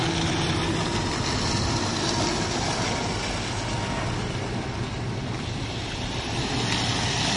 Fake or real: real